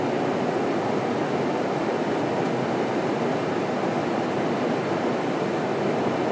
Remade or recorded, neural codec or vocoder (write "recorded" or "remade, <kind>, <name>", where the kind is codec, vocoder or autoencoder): recorded